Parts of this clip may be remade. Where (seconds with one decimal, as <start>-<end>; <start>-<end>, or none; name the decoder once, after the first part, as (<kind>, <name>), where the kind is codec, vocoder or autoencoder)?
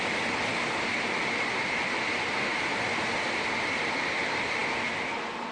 none